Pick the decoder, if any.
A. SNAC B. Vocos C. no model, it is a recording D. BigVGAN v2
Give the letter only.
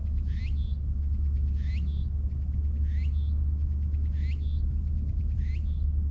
C